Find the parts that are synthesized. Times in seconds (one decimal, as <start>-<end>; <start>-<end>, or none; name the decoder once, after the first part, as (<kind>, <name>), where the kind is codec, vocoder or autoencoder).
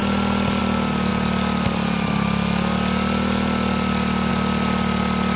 none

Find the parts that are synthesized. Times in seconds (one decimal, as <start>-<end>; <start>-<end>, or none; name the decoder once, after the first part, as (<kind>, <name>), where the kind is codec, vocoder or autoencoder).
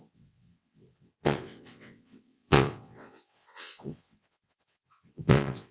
0.0-5.7 (vocoder, WaveNeXt)